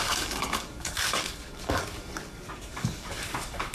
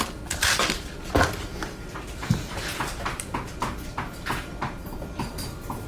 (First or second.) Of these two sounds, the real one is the second